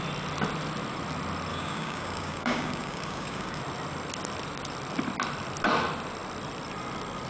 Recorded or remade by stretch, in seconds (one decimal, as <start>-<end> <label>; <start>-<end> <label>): 0.0-1.5 recorded; 1.5-3.6 remade; 3.6-7.3 recorded